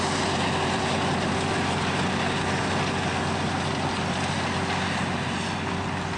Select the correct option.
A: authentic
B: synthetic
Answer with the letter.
A